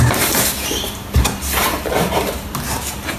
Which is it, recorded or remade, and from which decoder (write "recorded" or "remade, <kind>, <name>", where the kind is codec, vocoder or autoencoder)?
remade, vocoder, BigVGAN v2